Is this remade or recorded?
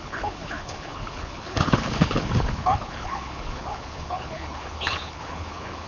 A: remade